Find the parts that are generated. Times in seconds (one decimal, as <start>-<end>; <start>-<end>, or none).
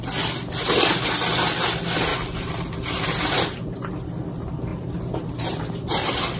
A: 2.1-3.9; 4.7-6.4